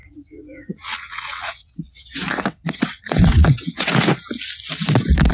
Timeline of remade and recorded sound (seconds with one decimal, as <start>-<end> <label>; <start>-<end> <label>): 0.0-3.9 remade; 3.9-5.3 recorded